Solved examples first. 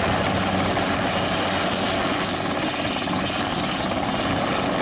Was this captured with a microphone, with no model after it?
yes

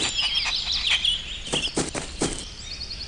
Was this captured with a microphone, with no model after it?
yes